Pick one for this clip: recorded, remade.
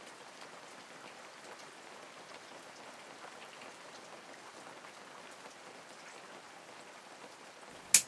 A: recorded